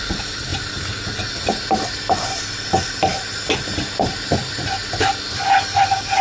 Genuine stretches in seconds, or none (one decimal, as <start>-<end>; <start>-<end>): 0.0-6.2